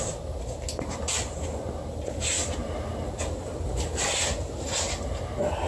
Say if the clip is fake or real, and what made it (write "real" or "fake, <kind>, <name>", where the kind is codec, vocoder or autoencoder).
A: real